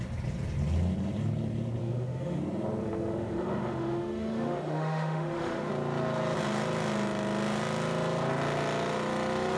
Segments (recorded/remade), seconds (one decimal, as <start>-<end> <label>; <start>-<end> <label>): 0.0-1.8 recorded; 1.8-2.4 remade; 2.4-2.8 recorded; 2.8-5.7 remade; 5.7-9.6 recorded